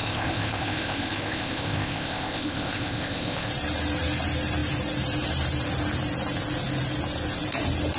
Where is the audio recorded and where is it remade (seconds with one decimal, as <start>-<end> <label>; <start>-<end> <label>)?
0.0-3.5 remade; 3.5-8.0 recorded